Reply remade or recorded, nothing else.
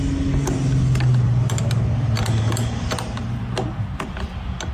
recorded